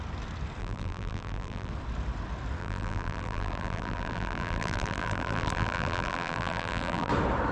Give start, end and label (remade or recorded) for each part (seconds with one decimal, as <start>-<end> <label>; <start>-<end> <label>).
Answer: 0.0-0.6 recorded; 0.6-1.7 remade; 1.7-2.6 recorded; 2.6-7.1 remade; 7.1-7.5 recorded